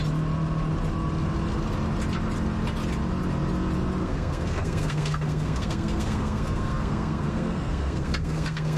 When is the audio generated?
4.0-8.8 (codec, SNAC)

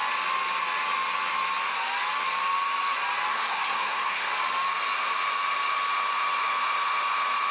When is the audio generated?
3.3-4.3 (codec, SNAC)

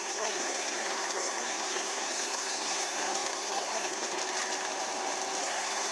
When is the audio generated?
0.0-4.2 (codec, SNAC); 5.4-5.9